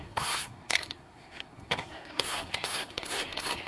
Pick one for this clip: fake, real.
fake